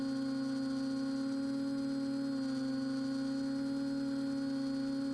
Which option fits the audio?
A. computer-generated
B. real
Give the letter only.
B